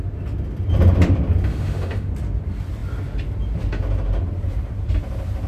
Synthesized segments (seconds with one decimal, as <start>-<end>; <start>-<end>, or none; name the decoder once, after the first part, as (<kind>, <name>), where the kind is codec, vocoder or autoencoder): 1.5-2.1 (autoencoder, DAC-VAE)